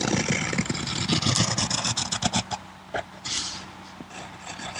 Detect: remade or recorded recorded